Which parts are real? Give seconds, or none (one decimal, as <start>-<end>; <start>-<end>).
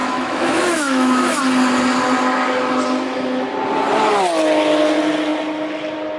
1.4-6.2